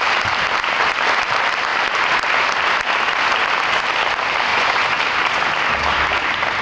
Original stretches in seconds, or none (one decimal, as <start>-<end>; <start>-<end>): 0.0-4.5; 5.0-6.6